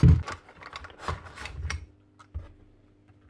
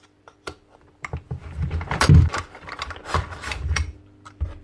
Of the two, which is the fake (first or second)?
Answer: second